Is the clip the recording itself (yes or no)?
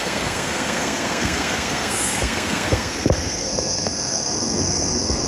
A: no